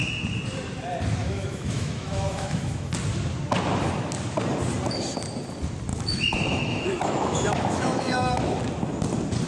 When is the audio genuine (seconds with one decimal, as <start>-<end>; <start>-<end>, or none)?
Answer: 0.0-1.2; 2.9-5.9; 8.6-9.5

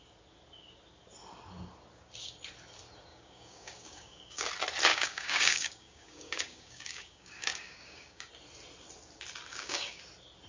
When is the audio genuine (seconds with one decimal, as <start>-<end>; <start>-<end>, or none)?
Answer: 0.0-3.1; 4.5-4.9; 8.3-9.5; 10.0-10.5

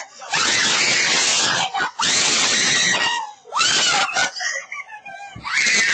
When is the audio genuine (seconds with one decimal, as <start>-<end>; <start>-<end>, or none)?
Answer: 3.5-5.9

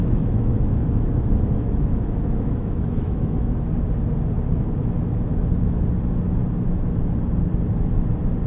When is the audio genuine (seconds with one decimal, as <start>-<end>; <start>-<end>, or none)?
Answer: 3.7-4.8; 5.8-8.5

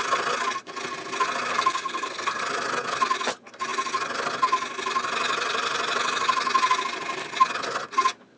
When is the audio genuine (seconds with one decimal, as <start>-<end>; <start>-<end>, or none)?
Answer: 0.0-1.5; 2.4-8.4

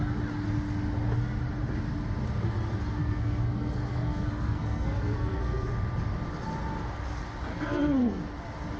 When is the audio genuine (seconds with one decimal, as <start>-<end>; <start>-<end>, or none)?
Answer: 0.0-3.0; 5.7-7.5; 8.2-8.8